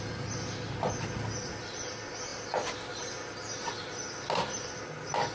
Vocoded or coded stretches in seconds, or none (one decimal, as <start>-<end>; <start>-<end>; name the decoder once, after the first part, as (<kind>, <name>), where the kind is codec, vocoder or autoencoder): none